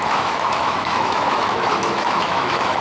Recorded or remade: remade